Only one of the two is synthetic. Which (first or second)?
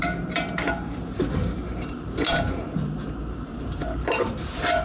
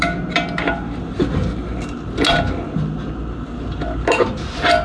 first